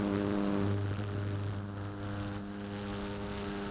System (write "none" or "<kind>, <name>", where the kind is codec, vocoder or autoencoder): none